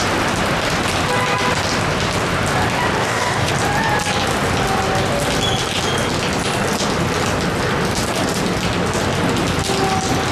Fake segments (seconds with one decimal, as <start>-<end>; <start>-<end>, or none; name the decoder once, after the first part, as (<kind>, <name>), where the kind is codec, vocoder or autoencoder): 3.0-3.5 (codec, DAC)